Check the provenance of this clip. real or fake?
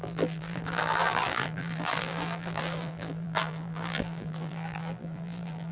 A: fake